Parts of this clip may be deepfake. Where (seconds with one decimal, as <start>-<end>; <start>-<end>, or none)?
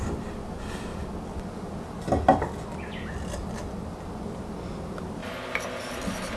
none